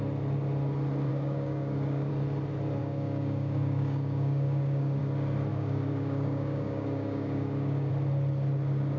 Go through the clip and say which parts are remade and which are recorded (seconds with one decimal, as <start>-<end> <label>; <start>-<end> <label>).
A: 0.0-1.1 recorded; 1.1-2.1 remade; 2.1-2.8 recorded; 2.8-5.0 remade; 5.0-5.5 recorded; 5.5-7.9 remade; 7.9-9.0 recorded